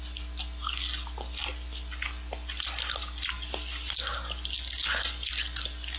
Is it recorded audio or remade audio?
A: recorded